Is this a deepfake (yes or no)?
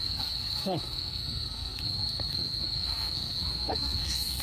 yes